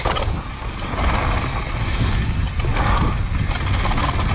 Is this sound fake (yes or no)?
no